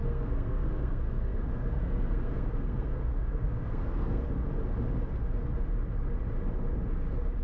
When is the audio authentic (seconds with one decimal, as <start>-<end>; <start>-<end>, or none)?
4.3-7.4